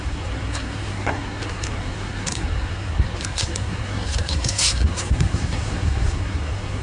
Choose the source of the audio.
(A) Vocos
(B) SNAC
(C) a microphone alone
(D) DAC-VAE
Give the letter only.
B